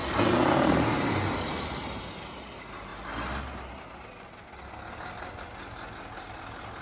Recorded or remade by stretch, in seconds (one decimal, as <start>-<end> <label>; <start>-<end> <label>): 0.0-2.0 remade; 2.0-6.8 recorded